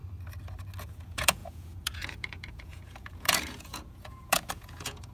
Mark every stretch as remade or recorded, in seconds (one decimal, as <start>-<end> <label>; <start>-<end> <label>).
0.0-0.8 recorded; 0.8-5.1 remade